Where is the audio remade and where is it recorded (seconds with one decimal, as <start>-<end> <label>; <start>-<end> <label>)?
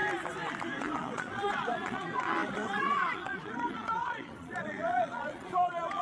0.0-0.8 recorded; 0.8-6.0 remade